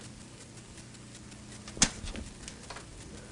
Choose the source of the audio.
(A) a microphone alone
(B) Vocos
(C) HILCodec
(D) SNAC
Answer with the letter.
A